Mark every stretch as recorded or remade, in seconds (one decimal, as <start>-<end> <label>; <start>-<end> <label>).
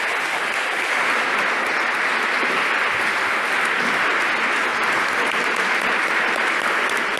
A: 0.0-7.2 recorded